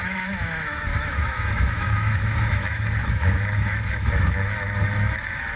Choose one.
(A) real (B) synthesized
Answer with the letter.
B